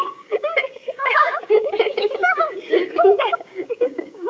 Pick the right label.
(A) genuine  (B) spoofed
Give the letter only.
B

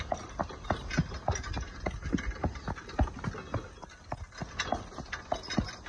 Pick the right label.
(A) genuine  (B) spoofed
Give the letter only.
A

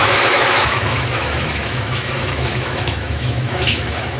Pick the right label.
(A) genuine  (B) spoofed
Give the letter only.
B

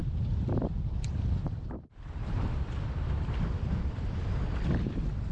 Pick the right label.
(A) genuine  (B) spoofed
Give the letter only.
B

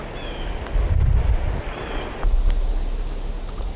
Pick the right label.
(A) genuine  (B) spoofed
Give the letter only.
A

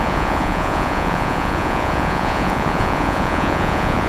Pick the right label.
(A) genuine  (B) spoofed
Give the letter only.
B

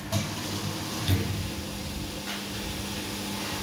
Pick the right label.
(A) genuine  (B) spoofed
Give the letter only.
A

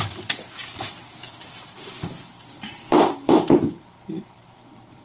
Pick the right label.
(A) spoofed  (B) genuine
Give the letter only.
A